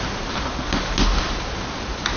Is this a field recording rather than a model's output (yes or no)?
yes